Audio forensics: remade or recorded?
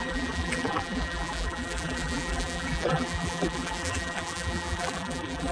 remade